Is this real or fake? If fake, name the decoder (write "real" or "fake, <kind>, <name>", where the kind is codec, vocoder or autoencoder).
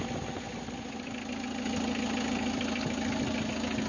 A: real